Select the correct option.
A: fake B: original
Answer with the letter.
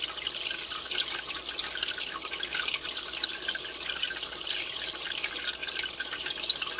B